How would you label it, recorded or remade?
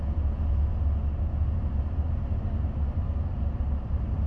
recorded